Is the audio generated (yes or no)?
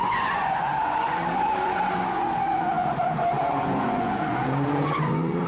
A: yes